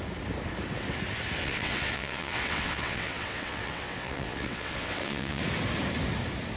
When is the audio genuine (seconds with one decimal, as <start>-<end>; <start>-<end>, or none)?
0.0-1.4; 5.4-6.6